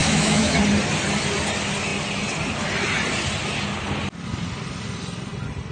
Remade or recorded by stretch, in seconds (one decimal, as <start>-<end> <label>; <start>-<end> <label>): 0.0-0.6 remade; 0.6-5.7 recorded